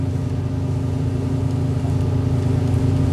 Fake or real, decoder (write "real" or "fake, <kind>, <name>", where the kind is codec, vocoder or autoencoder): real